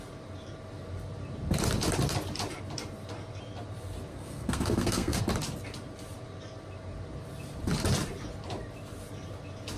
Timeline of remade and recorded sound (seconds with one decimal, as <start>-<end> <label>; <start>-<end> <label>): 0.0-4.1 recorded; 4.1-5.2 remade; 5.2-9.8 recorded